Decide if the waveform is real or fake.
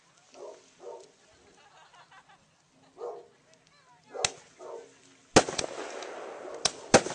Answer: real